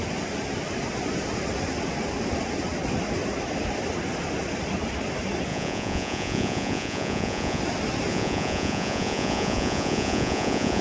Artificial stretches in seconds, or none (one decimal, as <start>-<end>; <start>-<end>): 5.5-7.6; 8.1-10.8